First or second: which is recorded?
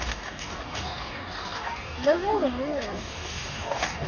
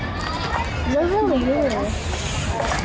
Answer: second